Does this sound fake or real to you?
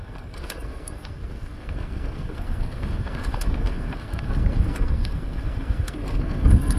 fake